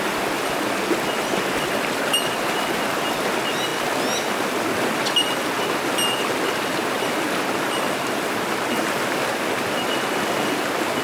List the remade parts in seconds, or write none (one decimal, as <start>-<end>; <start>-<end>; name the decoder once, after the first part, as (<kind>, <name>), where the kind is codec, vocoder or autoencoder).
none